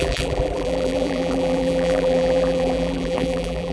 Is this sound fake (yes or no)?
yes